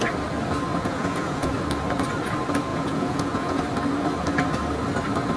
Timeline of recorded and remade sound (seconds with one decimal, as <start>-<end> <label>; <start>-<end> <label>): 0.0-0.7 recorded; 0.7-1.5 remade; 1.5-2.7 recorded; 2.7-3.6 remade; 3.6-5.4 recorded